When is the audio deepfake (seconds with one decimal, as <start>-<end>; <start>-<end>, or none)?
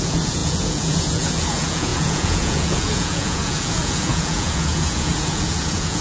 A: 0.0-6.0